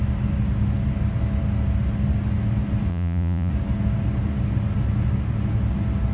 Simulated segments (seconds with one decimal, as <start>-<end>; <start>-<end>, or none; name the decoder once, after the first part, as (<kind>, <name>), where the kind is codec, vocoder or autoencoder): 2.9-3.5 (vocoder, Vocos)

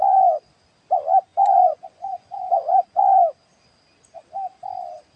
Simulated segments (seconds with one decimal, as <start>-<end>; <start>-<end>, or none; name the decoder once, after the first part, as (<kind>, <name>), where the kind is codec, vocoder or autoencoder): 1.3-3.0 (vocoder, Vocos)

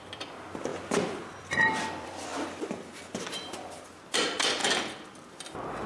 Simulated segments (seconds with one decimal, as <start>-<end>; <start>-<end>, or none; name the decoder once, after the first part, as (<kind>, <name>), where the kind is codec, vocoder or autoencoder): 0.0-0.7 (vocoder, BigVGAN v2); 1.4-2.3; 3.3-4.6; 5.3-5.9

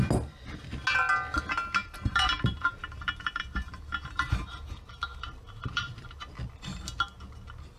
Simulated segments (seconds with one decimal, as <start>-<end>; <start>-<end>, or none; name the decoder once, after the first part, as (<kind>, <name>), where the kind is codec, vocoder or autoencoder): 1.8-6.2 (vocoder, BigVGAN v2)

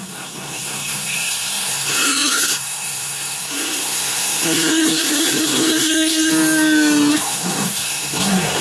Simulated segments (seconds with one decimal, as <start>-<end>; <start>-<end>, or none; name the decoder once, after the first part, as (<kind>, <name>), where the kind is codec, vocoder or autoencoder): 0.0-6.3 (codec, SNAC); 7.1-8.6